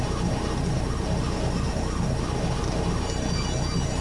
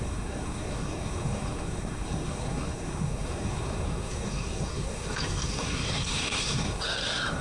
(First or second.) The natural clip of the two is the first